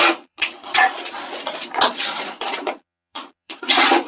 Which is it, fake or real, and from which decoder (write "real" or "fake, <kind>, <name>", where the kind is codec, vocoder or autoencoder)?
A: fake, vocoder, Vocos